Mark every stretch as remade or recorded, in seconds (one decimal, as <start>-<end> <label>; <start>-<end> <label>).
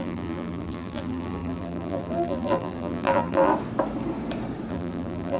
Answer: 0.0-3.5 remade; 3.5-4.7 recorded; 4.7-5.4 remade